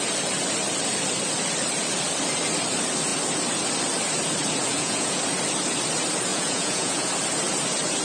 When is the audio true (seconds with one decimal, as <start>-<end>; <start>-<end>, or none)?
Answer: 0.0-4.7; 5.2-6.3; 7.1-8.0